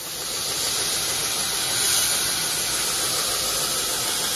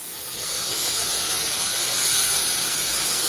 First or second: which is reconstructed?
second